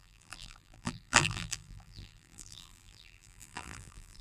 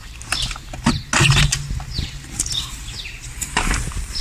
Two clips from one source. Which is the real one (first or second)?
second